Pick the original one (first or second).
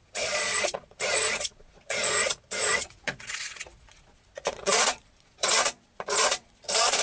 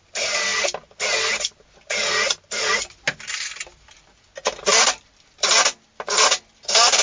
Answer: second